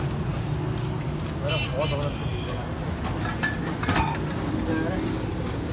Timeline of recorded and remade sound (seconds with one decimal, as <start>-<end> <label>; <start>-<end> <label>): 0.0-5.7 recorded

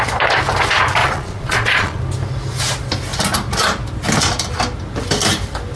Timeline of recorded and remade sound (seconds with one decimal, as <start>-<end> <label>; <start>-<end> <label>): 0.0-1.0 recorded; 1.0-2.0 remade; 2.0-5.8 recorded

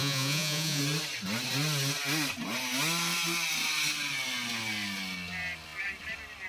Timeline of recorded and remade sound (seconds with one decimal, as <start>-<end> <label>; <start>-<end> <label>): 0.0-0.8 remade; 0.8-6.5 recorded

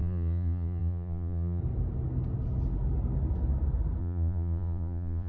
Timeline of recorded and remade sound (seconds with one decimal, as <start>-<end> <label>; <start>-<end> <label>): 0.0-1.6 remade; 1.6-4.0 recorded; 4.0-5.3 remade